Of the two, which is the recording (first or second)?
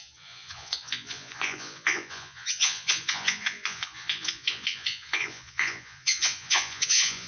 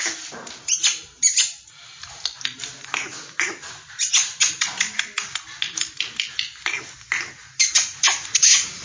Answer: second